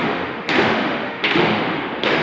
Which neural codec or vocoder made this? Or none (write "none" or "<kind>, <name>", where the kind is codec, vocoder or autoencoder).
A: autoencoder, DAC-VAE